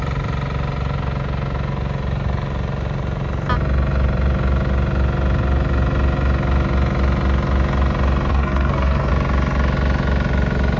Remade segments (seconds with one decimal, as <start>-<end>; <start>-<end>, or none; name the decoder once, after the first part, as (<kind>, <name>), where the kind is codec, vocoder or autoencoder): 8.3-9.1 (codec, SNAC)